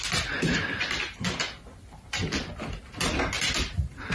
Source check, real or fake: real